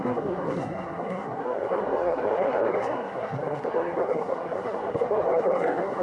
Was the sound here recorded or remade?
remade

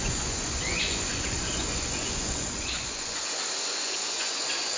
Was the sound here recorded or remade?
remade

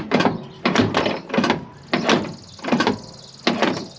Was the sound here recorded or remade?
recorded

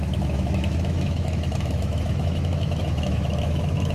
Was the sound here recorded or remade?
remade